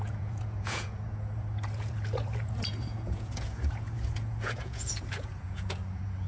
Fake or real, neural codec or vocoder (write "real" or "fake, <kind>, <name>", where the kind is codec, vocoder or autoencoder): fake, vocoder, Vocos